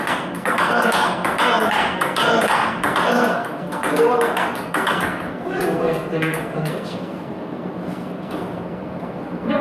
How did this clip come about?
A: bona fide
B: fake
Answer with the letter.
B